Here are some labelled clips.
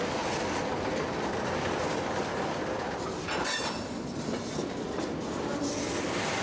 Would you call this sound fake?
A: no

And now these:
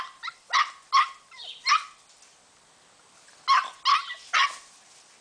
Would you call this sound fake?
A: no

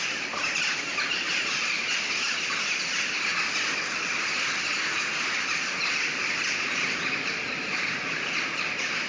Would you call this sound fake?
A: no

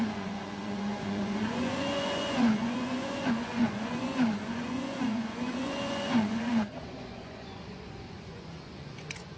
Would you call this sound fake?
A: yes